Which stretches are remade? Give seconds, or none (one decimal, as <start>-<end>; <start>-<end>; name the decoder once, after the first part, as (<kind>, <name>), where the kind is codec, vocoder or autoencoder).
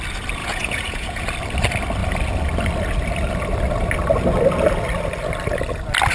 0.4-1.2 (vocoder, Vocos)